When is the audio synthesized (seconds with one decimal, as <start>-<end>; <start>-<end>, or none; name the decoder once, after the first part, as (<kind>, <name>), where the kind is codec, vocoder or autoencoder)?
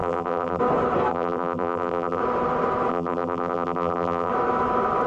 0.0-0.6 (vocoder, BigVGAN v2); 1.1-2.2; 2.9-4.3